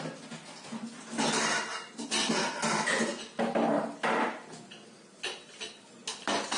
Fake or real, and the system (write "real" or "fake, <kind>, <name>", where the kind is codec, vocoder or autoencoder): real